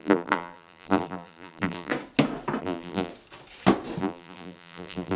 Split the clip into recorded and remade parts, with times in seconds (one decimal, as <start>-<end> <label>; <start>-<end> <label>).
0.0-1.9 remade; 1.9-2.6 recorded; 2.6-3.1 remade; 3.1-4.0 recorded; 4.0-5.2 remade